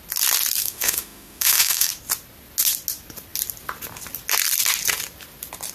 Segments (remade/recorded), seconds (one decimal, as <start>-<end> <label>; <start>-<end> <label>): 0.0-0.6 recorded; 0.6-1.9 remade; 1.9-5.7 recorded